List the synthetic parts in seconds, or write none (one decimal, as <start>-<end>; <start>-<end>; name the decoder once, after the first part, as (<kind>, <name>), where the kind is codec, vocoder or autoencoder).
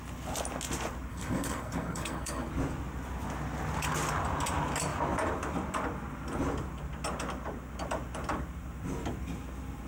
1.1-2.5 (codec, SNAC)